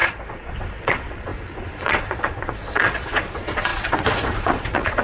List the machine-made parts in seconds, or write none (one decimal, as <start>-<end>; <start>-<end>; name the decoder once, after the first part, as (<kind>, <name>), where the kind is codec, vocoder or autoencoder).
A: 0.0-5.0 (vocoder, Vocos)